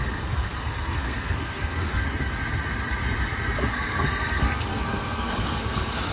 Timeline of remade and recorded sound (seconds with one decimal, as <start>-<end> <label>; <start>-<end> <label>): 0.0-2.0 remade; 2.0-3.7 recorded; 3.7-6.1 remade

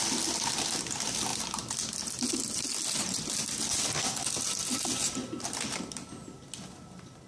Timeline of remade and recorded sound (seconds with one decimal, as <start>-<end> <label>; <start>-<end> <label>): 0.0-7.3 recorded

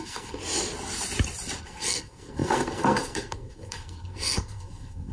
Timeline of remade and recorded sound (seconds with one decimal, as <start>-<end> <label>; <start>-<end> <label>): 0.0-0.4 remade; 0.4-1.6 recorded; 1.6-5.1 remade

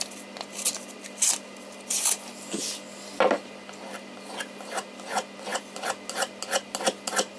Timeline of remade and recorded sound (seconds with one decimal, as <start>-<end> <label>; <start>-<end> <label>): 0.0-7.4 recorded